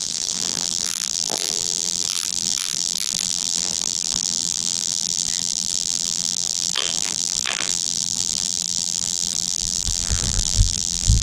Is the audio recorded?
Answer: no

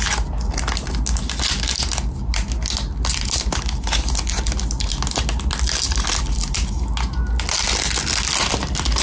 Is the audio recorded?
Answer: yes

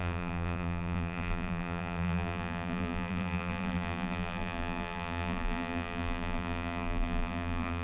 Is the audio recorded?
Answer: no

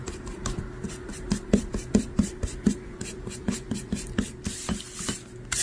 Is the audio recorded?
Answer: no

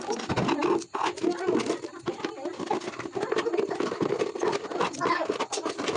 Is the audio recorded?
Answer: yes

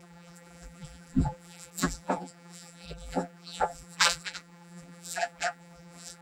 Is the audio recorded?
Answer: no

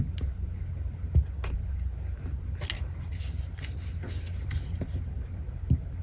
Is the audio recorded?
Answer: yes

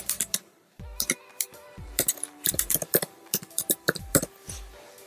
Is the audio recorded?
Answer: no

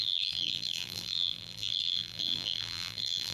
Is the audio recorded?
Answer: no